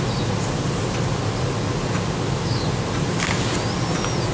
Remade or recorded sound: recorded